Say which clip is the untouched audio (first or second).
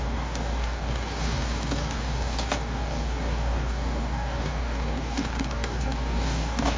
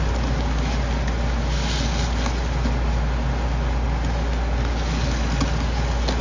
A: second